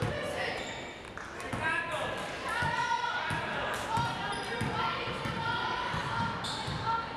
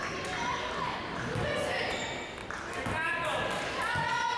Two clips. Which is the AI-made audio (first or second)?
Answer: first